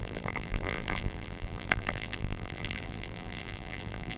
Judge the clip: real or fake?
fake